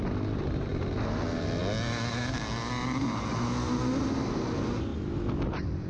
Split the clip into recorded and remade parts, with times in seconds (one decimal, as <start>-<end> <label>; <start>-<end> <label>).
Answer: 0.0-5.9 recorded